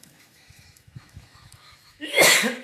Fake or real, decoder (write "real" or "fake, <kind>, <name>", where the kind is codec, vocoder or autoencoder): fake, autoencoder, DAC-VAE